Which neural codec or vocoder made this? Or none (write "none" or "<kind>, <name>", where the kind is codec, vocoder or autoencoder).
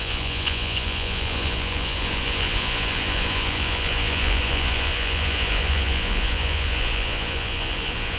vocoder, Vocos